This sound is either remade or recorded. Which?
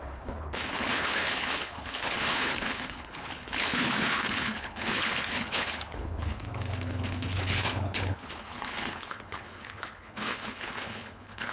remade